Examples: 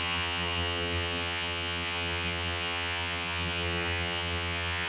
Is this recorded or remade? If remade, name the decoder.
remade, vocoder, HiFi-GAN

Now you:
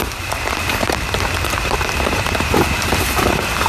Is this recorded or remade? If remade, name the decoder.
remade, vocoder, BigVGAN v2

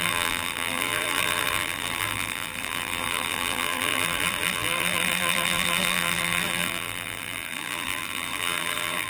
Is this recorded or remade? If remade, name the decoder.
remade, vocoder, BigVGAN v2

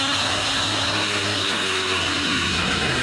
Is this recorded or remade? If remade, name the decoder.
remade, codec, SNAC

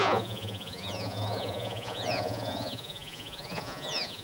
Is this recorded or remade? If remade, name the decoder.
remade, vocoder, Vocos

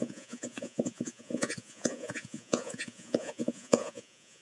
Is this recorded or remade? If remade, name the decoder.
remade, vocoder, Vocos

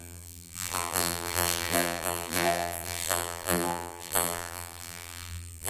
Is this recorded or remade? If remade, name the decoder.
remade, vocoder, BigVGAN v2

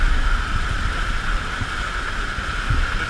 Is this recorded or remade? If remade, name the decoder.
recorded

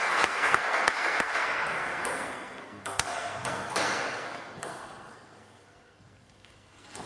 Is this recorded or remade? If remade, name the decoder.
remade, codec, SNAC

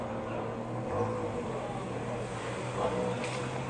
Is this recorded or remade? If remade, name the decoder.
recorded